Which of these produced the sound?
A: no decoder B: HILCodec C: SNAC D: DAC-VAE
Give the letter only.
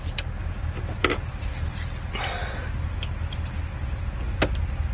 A